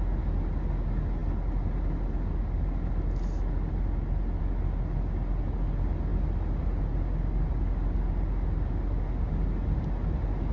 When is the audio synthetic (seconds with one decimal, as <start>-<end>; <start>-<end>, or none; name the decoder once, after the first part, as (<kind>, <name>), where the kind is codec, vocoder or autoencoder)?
none